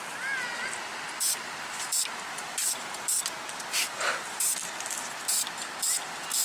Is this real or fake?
real